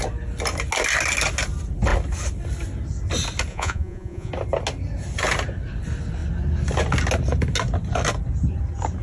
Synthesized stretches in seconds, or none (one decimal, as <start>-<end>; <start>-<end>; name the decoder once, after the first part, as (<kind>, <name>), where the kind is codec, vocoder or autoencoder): 3.5-4.3 (vocoder, Vocos)